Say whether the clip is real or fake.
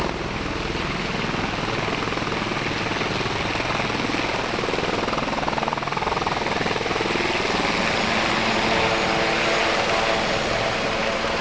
real